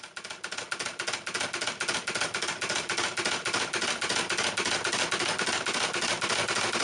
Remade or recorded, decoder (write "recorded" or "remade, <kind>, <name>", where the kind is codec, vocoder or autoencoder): recorded